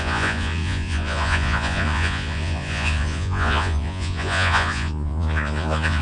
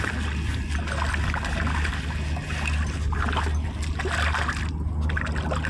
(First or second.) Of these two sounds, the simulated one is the first